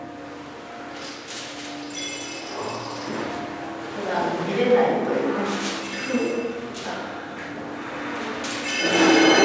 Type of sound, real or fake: real